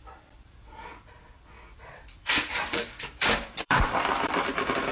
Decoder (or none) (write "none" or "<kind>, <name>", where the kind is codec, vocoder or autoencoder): vocoder, BigVGAN v2